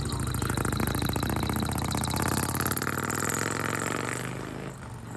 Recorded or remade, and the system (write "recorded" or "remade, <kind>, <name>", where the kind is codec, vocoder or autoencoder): recorded